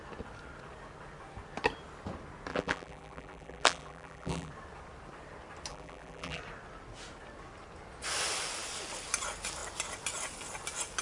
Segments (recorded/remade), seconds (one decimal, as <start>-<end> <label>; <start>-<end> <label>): 0.0-2.5 recorded; 2.5-4.5 remade; 4.5-5.7 recorded; 5.7-6.4 remade; 6.4-11.0 recorded